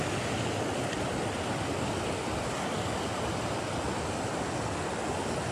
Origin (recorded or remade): recorded